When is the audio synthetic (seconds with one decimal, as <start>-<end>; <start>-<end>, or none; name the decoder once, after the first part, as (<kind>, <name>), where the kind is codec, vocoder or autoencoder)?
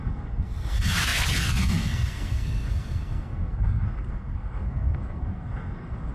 0.0-6.1 (codec, SNAC)